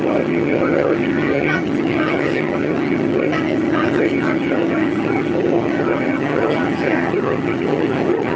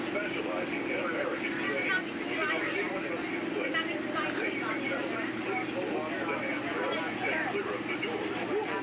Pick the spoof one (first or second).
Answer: first